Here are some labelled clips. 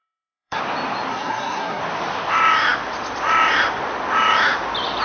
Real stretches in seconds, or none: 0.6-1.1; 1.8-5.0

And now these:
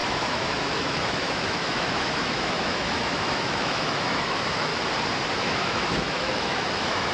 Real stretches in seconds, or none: 4.7-5.3

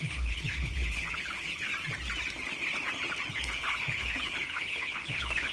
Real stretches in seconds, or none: 1.7-3.3

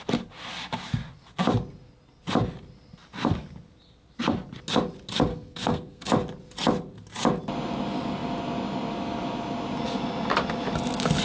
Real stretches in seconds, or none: 0.0-5.3; 6.1-11.2

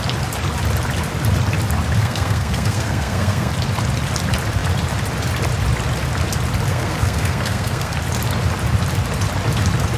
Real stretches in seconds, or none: 0.0-2.0; 3.5-6.7; 7.9-10.0

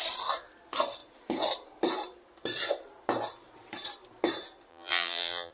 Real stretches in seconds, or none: 0.0-4.7

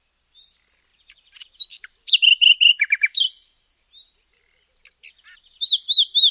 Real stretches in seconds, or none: 0.0-0.9; 4.4-6.3